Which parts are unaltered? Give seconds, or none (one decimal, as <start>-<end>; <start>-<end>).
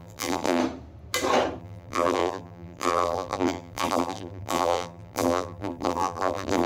0.6-1.6